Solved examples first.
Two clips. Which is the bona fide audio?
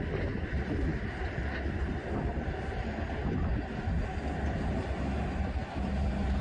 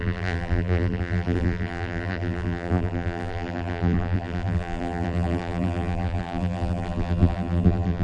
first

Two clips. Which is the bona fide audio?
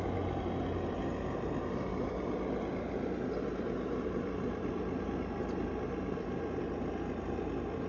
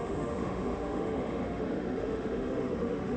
first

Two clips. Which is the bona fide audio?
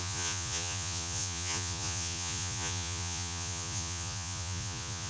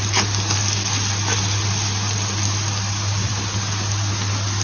second